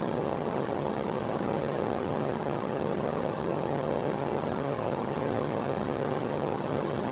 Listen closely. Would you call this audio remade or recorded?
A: remade